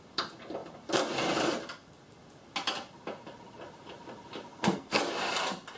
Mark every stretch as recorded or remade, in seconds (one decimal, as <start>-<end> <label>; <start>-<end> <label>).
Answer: 0.0-4.5 recorded; 4.5-5.0 remade; 5.0-5.8 recorded